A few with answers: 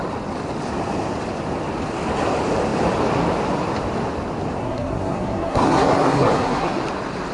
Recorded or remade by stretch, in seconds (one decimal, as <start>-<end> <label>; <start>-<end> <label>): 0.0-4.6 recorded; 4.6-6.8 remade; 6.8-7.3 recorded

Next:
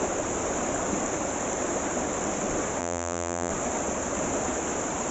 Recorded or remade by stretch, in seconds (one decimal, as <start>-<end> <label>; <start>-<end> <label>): 0.0-2.8 recorded; 2.8-3.5 remade; 3.5-5.1 recorded

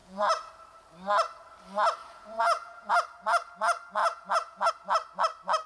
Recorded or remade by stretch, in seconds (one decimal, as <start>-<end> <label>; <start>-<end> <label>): 0.0-0.5 remade; 0.5-2.0 recorded; 2.0-2.9 remade; 2.9-4.0 recorded; 4.0-4.7 remade; 4.7-5.7 recorded